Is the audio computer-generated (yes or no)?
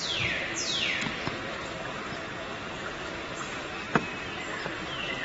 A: no